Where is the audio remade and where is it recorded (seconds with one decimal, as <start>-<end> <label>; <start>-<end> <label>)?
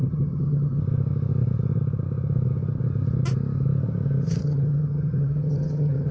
0.0-0.8 remade; 0.8-4.4 recorded; 4.4-6.1 remade